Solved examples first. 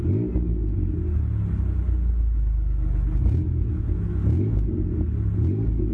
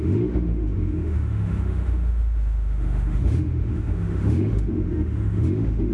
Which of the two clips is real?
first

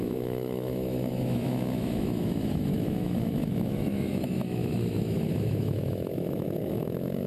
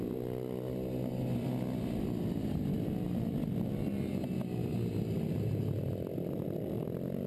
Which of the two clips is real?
second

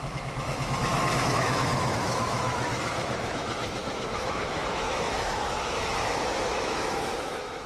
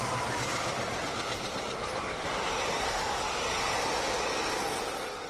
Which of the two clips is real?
second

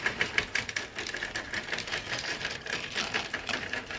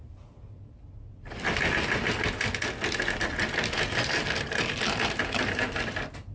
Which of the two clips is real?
second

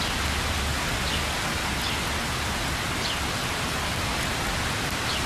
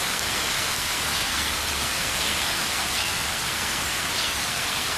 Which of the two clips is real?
first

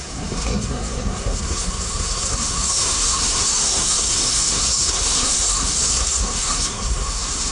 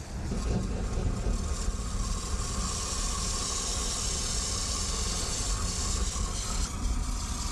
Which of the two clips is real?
second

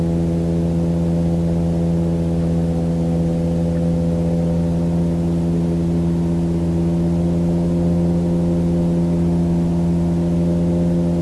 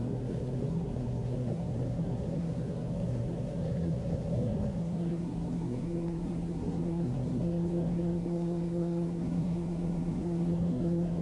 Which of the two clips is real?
first